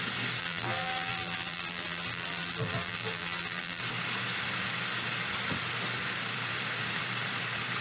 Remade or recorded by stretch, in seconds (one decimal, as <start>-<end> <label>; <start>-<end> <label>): 0.0-0.4 recorded; 0.4-3.8 remade; 3.8-7.8 recorded